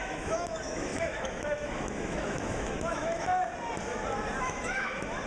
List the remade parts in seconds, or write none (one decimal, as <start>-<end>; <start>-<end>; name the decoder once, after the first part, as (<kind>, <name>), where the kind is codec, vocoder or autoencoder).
0.0-3.3 (autoencoder, DAC-VAE); 4.4-5.3